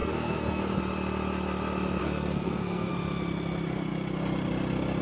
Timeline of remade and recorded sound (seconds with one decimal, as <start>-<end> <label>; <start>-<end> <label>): 0.0-0.6 remade; 0.6-2.0 recorded; 2.0-2.9 remade; 2.9-5.0 recorded